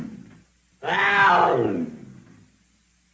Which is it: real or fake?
real